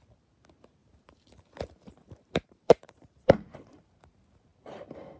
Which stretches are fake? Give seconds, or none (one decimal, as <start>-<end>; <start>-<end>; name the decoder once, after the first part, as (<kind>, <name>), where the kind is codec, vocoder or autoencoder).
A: 0.8-3.9 (vocoder, BigVGAN v2)